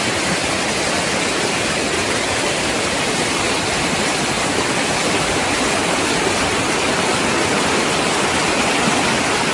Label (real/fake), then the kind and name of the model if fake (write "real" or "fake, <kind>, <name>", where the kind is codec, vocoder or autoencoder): real